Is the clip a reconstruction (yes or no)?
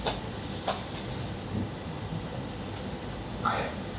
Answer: no